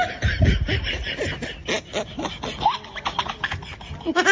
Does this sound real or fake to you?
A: real